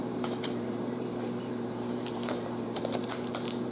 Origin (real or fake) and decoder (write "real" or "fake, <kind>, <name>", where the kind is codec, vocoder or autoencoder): fake, vocoder, BigVGAN v2